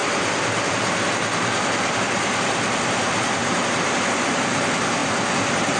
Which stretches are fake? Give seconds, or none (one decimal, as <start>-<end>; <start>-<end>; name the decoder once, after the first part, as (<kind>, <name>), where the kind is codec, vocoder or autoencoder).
none